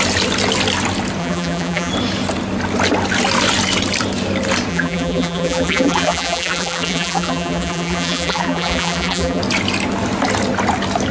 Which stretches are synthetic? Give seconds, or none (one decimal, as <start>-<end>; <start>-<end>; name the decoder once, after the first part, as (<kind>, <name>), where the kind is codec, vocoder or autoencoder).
1.2-1.9 (vocoder, BigVGAN v2); 4.7-9.4